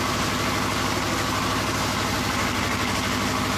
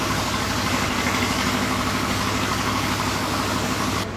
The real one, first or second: first